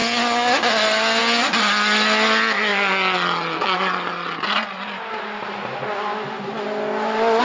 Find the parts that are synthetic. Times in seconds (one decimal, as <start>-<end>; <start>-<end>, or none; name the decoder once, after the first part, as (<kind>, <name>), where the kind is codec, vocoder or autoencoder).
none